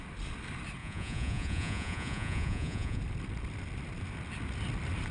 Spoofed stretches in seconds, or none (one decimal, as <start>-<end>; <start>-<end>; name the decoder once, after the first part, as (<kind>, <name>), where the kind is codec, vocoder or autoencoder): 0.8-3.0 (vocoder, Vocos)